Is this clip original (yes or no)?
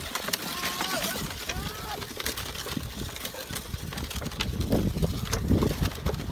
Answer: yes